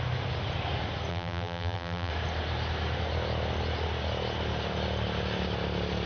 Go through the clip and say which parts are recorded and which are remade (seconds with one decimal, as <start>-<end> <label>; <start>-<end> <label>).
0.0-1.1 recorded; 1.1-2.1 remade; 2.1-6.1 recorded